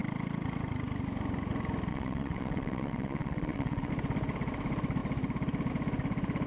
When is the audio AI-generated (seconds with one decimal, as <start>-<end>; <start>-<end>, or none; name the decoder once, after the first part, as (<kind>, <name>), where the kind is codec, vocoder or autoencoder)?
1.9-3.9 (vocoder, WaveNeXt)